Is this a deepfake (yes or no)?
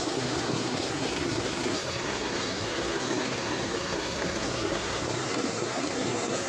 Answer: yes